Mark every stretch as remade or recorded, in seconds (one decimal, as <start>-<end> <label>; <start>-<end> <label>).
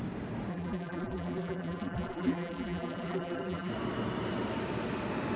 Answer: 0.0-0.5 recorded; 0.5-3.7 remade; 3.7-5.4 recorded